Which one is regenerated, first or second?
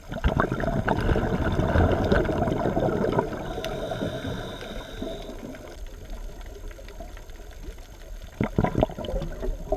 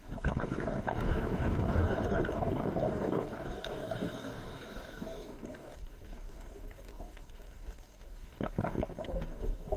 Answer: second